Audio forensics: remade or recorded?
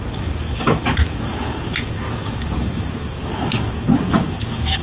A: remade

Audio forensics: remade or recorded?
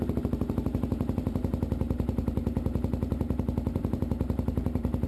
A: remade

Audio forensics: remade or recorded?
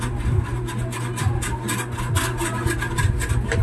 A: recorded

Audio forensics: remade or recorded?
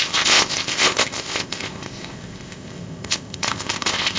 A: remade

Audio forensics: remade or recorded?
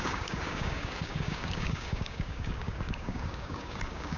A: remade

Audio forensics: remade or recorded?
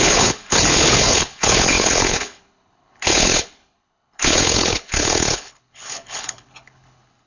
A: remade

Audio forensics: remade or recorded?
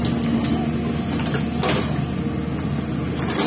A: recorded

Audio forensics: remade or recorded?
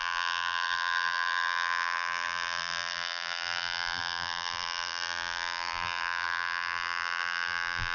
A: remade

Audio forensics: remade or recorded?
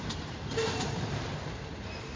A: remade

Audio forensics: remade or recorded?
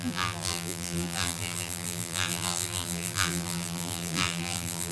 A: remade